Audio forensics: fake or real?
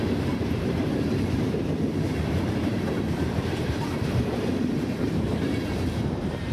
fake